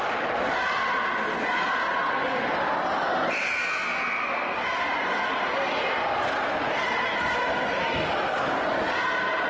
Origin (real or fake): real